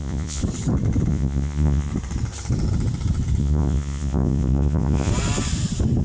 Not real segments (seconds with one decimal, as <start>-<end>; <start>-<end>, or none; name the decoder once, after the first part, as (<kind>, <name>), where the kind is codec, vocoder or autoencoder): 0.0-0.4 (vocoder, Vocos); 1.1-1.9; 3.4-5.1